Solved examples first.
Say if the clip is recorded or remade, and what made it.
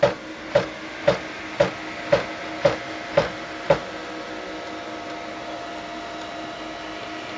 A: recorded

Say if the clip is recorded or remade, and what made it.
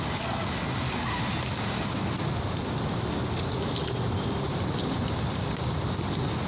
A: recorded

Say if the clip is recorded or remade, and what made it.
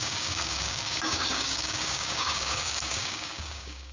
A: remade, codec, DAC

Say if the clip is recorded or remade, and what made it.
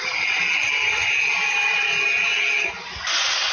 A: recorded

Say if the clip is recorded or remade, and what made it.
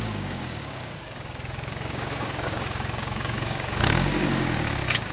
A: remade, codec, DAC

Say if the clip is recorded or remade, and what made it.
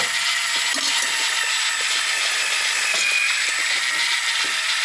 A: recorded